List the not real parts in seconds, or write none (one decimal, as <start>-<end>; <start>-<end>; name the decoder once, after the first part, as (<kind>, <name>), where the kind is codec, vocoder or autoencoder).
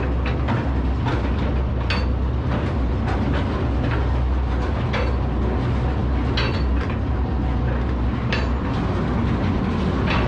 none